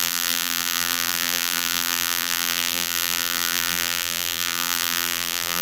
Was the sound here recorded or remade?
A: remade